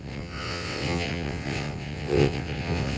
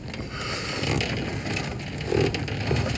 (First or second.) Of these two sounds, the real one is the second